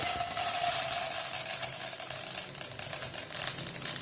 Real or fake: real